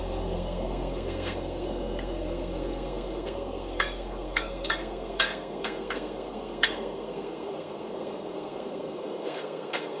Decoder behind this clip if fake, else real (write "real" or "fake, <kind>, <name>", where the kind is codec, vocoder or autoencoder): fake, codec, SNAC